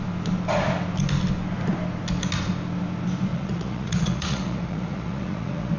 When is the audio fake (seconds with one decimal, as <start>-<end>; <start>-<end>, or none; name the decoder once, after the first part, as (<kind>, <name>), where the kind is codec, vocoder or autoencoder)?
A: 3.3-5.8 (vocoder, Vocos)